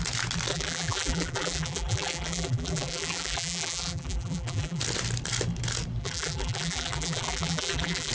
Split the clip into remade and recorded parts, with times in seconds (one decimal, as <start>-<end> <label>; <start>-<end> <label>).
0.0-0.5 recorded; 0.5-4.8 remade; 4.8-6.0 recorded; 6.0-8.1 remade